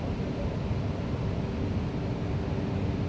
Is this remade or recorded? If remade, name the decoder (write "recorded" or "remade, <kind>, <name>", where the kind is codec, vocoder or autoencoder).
recorded